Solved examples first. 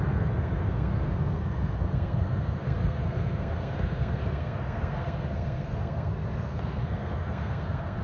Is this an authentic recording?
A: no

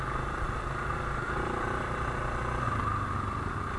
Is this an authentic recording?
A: no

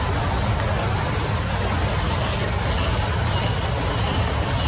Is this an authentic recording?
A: yes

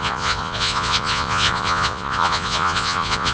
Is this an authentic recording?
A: no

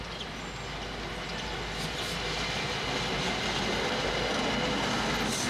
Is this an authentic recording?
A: yes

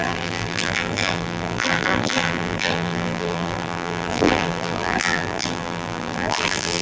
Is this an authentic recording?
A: no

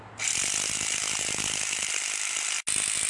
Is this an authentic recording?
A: yes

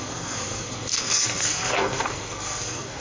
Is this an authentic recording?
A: no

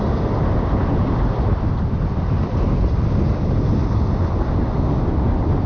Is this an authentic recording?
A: yes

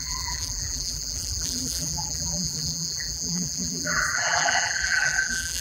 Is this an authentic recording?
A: no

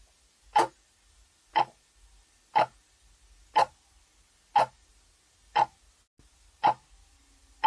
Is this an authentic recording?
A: yes